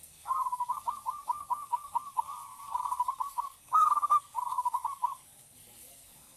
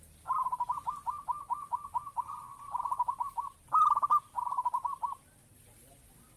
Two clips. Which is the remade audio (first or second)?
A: first